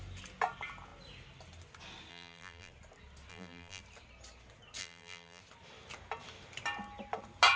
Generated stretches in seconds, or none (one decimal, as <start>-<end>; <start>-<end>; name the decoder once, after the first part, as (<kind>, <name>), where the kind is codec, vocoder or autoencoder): 2.1-2.7 (vocoder, BigVGAN v2); 3.3-3.8; 4.8-5.4

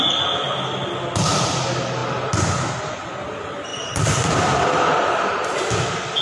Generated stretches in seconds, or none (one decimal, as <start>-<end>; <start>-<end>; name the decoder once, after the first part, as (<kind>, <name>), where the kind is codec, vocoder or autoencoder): 3.7-5.6 (vocoder, BigVGAN v2)

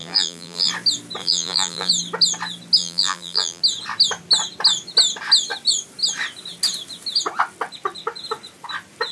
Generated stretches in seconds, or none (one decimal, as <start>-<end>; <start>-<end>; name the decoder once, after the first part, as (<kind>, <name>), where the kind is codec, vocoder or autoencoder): 0.0-0.7 (vocoder, BigVGAN v2); 1.2-1.9; 2.8-3.6

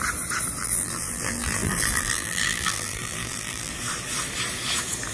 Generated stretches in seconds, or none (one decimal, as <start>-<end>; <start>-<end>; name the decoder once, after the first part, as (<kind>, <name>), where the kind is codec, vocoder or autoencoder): 0.6-3.7 (vocoder, BigVGAN v2)

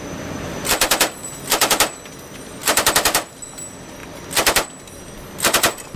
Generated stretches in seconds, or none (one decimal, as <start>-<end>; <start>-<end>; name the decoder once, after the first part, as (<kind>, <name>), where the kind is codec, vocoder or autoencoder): none

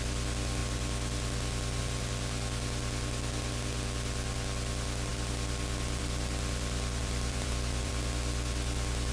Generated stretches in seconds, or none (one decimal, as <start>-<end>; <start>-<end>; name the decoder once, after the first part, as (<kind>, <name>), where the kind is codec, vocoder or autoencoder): 7.0-7.9 (vocoder, BigVGAN v2)

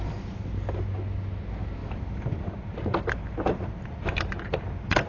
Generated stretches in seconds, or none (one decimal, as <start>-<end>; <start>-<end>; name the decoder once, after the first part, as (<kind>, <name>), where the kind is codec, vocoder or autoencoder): 1.8-5.1 (vocoder, BigVGAN v2)

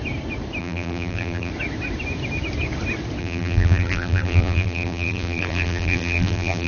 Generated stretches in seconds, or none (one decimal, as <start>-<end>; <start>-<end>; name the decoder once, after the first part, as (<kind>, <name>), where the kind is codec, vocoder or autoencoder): 0.6-1.5 (vocoder, BigVGAN v2); 3.2-6.7